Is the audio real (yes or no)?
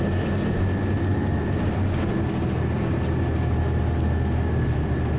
yes